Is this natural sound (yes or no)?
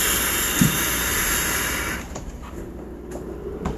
yes